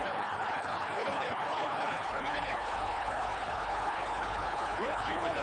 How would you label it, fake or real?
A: fake